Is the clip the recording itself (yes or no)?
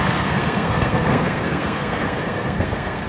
no